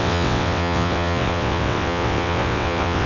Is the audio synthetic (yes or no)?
yes